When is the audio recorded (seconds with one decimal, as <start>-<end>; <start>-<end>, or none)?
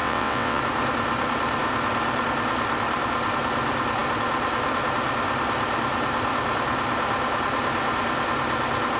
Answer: 0.6-9.0